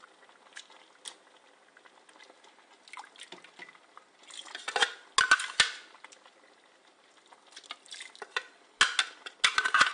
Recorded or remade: recorded